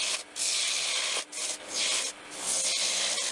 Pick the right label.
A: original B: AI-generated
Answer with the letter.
A